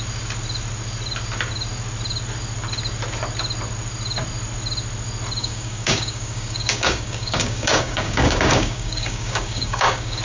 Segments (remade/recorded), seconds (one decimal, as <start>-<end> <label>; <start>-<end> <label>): 0.0-5.4 recorded; 5.4-10.2 remade